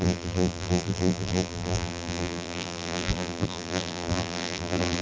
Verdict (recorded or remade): remade